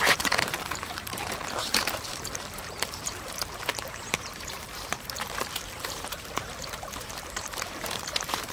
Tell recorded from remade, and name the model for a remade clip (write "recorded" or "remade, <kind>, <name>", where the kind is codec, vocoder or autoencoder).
remade, vocoder, BigVGAN v2